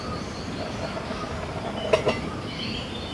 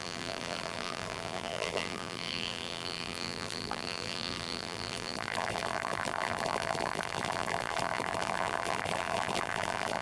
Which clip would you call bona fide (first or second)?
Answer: first